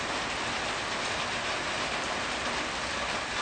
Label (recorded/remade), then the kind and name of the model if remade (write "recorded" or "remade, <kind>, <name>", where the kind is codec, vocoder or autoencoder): recorded